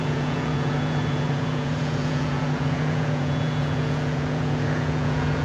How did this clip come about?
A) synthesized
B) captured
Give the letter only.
A